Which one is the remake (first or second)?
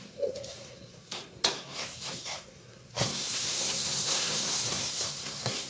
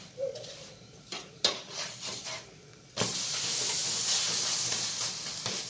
first